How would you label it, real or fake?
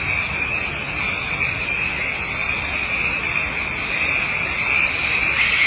real